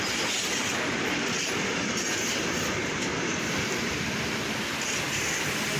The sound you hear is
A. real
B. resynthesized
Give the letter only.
A